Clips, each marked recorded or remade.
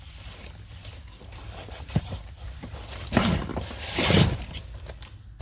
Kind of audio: recorded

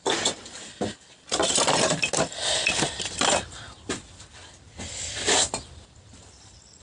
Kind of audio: recorded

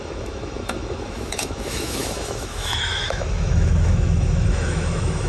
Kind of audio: remade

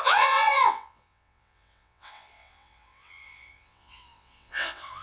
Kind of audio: remade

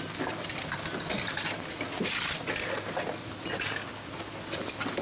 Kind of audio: recorded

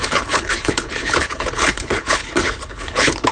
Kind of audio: remade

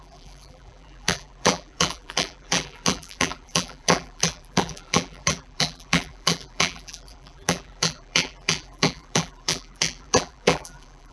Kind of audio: remade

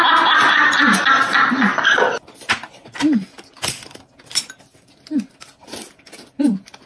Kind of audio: recorded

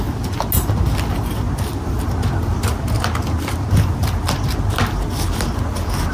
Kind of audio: recorded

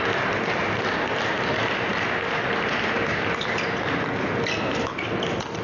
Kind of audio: recorded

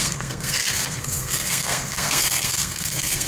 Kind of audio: remade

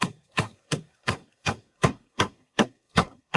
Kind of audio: remade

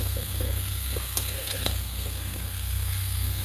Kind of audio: remade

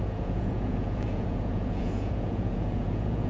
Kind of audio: remade